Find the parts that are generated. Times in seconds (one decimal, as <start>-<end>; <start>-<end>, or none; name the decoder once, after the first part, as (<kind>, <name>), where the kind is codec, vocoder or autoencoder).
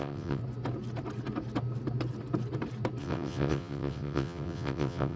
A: 0.0-0.4 (vocoder, WaveNeXt); 3.0-5.2